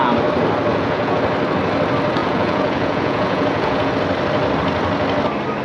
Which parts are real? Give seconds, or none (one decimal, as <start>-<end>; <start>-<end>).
0.0-0.7; 1.2-2.2; 3.9-5.6